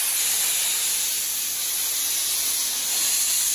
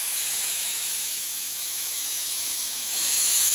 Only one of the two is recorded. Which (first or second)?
first